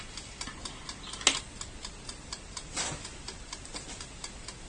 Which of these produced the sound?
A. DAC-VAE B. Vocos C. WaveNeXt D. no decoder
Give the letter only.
D